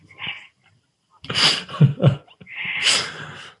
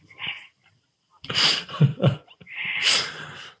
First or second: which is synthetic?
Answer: second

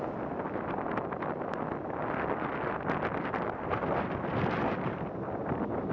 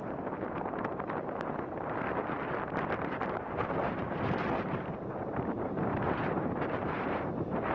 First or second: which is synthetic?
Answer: second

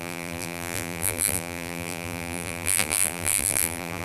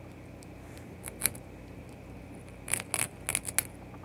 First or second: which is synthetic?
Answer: first